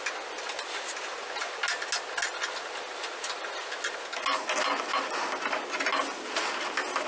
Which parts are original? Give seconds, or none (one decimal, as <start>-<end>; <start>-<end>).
0.0-7.1